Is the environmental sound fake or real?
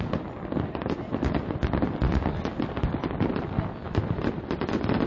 real